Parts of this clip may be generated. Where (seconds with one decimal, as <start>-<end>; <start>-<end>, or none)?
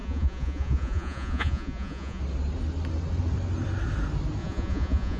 0.0-2.2; 4.4-5.2